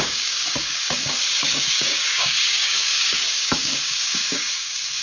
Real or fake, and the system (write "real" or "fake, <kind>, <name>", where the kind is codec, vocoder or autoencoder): fake, codec, DAC